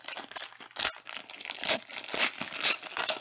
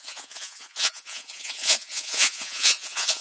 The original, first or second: first